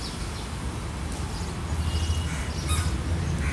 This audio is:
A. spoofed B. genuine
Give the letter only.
B